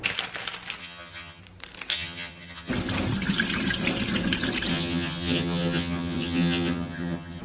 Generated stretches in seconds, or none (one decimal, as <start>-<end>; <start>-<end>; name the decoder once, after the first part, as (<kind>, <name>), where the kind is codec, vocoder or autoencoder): 0.8-1.4 (vocoder, HiFi-GAN); 1.9-2.7; 4.7-7.4